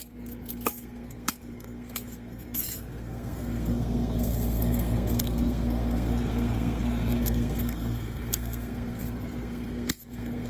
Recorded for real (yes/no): no